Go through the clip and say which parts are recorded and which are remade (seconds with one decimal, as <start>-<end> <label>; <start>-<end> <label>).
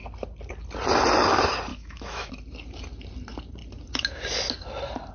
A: 0.0-1.7 recorded; 1.7-2.3 remade; 2.3-5.1 recorded